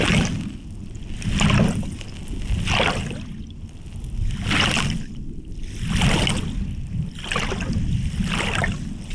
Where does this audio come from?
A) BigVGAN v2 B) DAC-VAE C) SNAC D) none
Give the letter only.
D